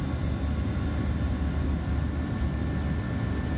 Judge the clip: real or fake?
real